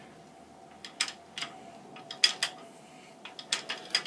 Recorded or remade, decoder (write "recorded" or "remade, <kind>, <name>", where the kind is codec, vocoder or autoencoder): recorded